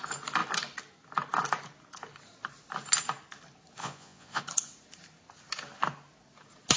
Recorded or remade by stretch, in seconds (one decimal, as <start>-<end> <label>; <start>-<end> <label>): 0.0-3.8 recorded; 3.8-4.4 remade; 4.4-6.8 recorded